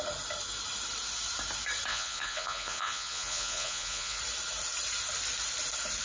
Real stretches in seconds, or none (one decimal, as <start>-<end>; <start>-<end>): 0.0-1.9; 4.2-6.0